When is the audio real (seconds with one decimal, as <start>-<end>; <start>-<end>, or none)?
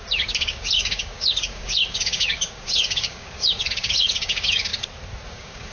4.7-5.3